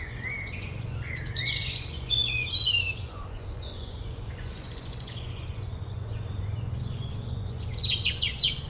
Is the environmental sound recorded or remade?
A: remade